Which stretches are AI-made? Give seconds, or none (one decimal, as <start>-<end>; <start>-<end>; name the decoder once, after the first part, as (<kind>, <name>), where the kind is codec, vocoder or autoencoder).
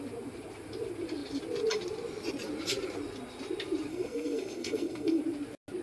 3.9-5.2 (codec, SNAC)